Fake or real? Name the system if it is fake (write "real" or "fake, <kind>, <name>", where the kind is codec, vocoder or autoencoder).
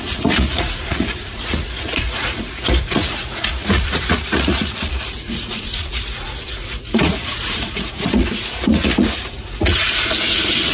fake, vocoder, Vocos